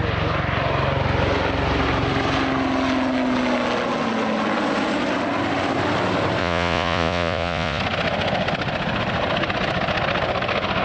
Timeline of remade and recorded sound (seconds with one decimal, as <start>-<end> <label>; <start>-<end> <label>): 0.0-6.4 recorded; 6.4-7.8 remade; 7.8-10.8 recorded